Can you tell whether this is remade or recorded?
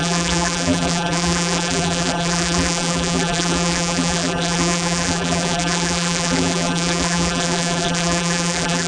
remade